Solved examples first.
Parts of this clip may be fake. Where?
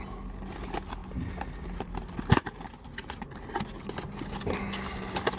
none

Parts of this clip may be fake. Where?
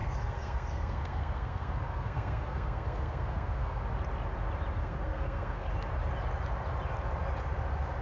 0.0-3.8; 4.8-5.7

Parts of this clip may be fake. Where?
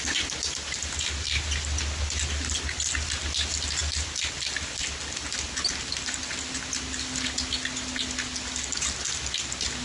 none